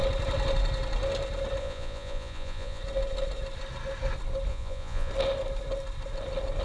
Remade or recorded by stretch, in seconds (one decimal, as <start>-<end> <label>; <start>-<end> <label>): 0.0-1.6 recorded; 1.6-2.8 remade; 2.8-4.5 recorded; 4.5-5.1 remade; 5.1-6.6 recorded